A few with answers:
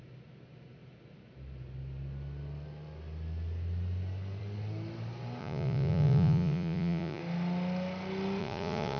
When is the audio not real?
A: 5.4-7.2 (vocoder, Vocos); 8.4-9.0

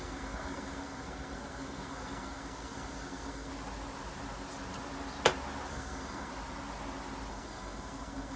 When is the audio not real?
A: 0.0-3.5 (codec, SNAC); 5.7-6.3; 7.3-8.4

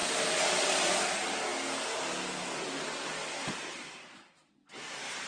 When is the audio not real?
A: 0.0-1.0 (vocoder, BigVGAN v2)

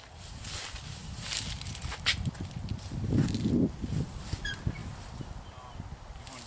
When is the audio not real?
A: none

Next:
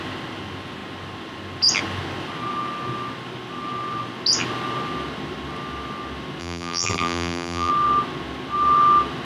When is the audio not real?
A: 6.4-7.7 (vocoder, BigVGAN v2)

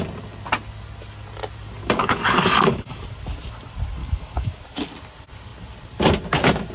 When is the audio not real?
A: 1.8-3.0 (codec, DAC); 4.0-4.6

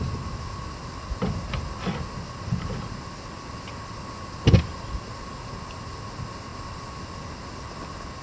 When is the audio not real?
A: none

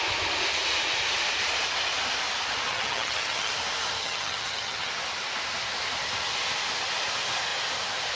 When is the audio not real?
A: 2.7-3.5 (vocoder, HiFi-GAN); 4.0-4.9